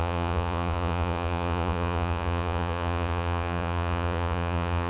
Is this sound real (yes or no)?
no